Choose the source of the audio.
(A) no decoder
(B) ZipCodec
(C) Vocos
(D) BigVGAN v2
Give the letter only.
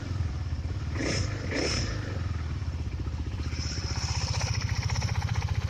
D